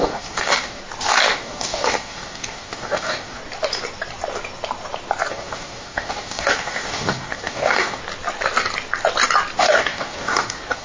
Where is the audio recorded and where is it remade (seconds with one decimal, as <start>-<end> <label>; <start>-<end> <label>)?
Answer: 0.0-0.8 remade; 0.8-1.3 recorded; 1.3-3.4 remade; 3.4-5.3 recorded; 5.3-8.0 remade; 8.0-9.6 recorded; 9.6-10.8 remade